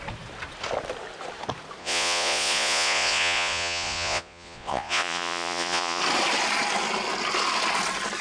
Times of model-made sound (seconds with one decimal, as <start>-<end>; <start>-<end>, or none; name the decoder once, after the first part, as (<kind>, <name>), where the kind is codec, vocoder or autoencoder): 1.8-6.0 (vocoder, Vocos)